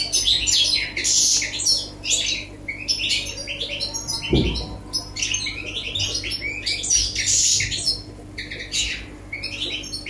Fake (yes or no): no